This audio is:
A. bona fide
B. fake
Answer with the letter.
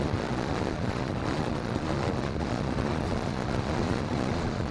B